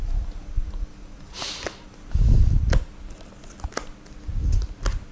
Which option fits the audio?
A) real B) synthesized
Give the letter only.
A